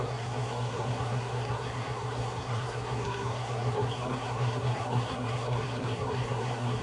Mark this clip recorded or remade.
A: remade